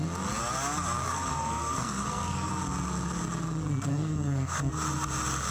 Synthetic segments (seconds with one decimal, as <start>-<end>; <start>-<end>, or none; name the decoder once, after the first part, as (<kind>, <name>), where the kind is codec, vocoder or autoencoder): 1.0-2.5 (codec, SNAC); 3.9-4.7